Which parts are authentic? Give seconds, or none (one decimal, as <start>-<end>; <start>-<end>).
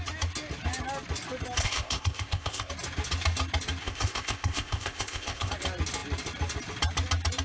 0.0-1.6; 2.7-3.8; 5.5-7.4